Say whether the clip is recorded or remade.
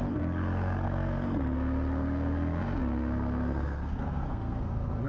remade